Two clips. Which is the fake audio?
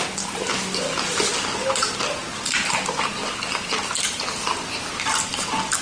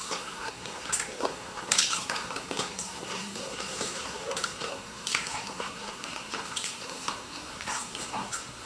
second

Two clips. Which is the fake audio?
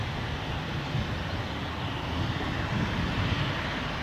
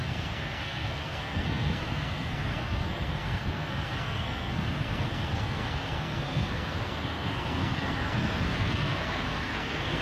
second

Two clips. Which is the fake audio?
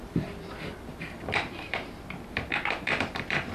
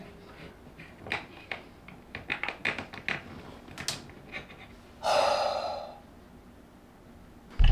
first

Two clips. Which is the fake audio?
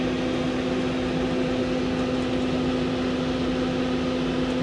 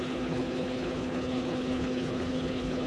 second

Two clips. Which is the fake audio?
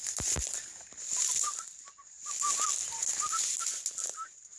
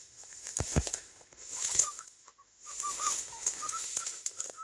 second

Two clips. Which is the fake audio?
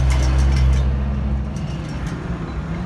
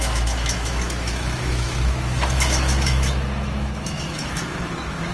second